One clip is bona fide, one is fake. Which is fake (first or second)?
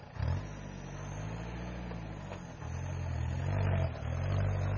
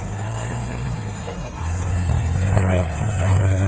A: second